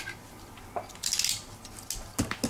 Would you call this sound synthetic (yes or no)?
no